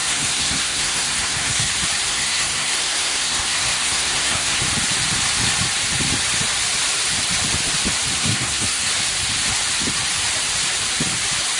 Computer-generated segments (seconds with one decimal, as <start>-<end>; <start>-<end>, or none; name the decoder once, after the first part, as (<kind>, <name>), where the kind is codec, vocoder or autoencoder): 0.0-1.7 (codec, SNAC); 2.1-4.6; 8.1-8.9

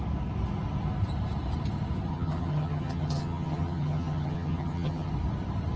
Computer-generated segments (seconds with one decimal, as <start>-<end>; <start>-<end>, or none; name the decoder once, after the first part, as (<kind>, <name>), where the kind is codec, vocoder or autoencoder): 2.1-5.1 (vocoder, HiFi-GAN)